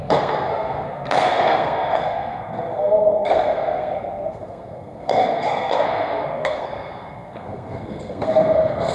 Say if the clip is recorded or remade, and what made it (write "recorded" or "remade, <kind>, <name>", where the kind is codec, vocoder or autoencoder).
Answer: remade, codec, SNAC